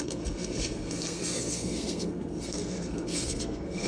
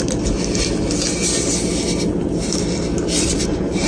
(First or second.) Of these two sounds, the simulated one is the first